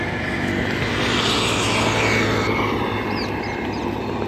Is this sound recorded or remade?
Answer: recorded